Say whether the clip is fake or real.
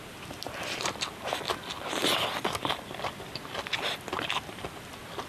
real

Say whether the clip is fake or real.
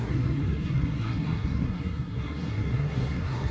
fake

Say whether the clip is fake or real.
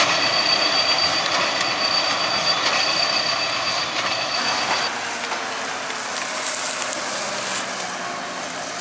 real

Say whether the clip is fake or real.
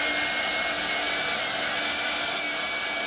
real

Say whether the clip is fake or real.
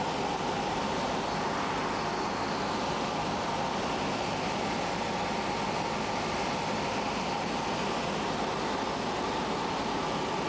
real